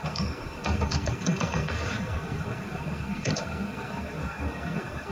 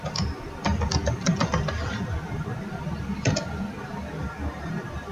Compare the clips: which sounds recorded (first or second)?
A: second